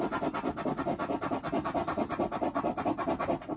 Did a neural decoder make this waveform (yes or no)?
no